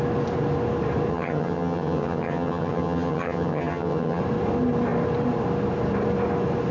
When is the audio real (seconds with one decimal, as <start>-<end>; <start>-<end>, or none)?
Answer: 0.0-1.1; 4.2-6.7